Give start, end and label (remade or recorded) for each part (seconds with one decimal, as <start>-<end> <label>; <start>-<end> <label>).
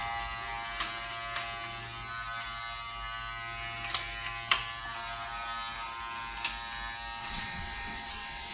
0.0-7.2 recorded; 7.2-8.5 remade